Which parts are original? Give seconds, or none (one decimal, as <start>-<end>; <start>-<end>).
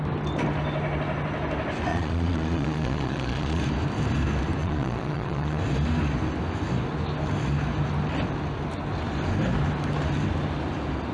0.0-1.9; 3.6-4.6; 5.6-11.1